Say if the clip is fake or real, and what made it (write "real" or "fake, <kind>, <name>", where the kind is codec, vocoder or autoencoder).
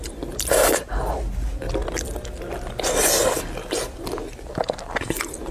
real